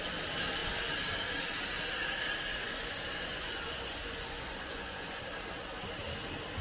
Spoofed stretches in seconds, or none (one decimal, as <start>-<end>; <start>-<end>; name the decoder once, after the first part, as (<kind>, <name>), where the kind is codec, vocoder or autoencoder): 2.5-5.2 (vocoder, Vocos)